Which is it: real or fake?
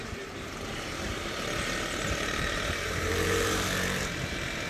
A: fake